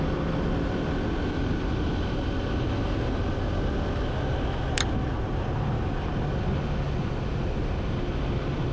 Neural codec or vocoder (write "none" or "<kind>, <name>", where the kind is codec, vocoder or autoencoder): none